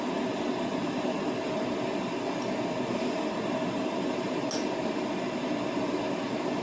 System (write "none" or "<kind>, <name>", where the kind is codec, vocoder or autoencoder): none